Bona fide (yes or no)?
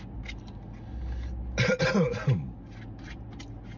yes